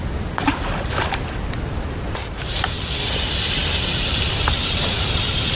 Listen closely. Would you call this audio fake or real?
real